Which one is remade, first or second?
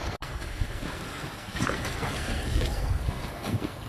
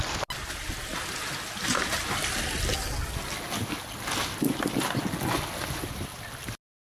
first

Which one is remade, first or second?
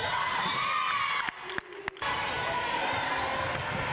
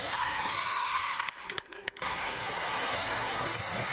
second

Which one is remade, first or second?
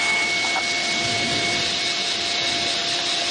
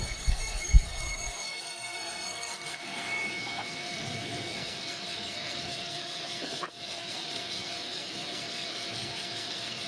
second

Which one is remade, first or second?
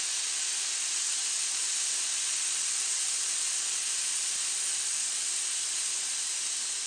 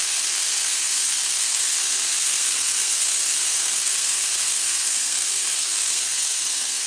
second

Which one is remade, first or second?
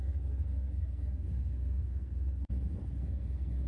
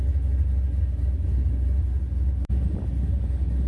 first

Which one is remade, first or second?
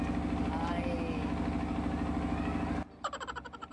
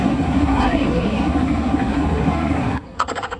second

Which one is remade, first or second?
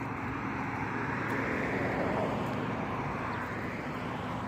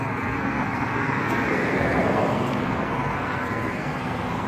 second